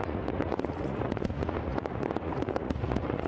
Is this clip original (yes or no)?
no